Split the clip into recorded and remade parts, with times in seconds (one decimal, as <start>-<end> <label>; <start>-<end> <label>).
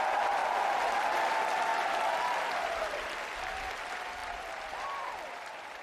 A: 0.0-1.7 recorded; 1.7-3.6 remade; 3.6-4.2 recorded; 4.2-5.8 remade